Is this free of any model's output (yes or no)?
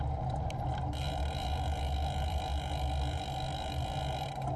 yes